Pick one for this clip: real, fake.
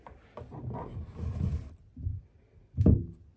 real